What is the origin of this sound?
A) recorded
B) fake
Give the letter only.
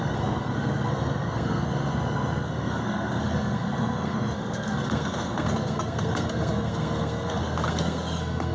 B